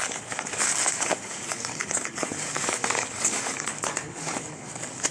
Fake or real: fake